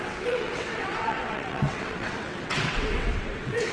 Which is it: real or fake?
fake